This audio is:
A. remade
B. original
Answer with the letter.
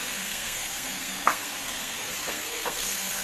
A